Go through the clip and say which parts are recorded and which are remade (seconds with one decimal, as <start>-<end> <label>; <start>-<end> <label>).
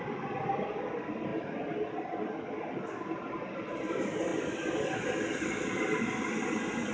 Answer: 0.0-6.9 recorded